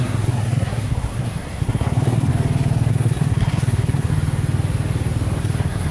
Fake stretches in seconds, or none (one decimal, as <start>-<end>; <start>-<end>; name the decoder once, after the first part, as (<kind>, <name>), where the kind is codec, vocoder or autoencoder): 0.0-2.3 (codec, SNAC); 2.9-4.1; 5.4-5.9

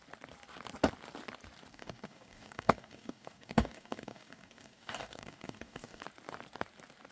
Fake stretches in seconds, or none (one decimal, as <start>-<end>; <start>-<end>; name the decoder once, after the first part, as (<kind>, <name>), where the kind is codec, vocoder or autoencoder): 1.7-6.0 (codec, DAC)